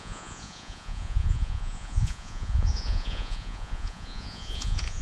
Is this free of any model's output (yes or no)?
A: no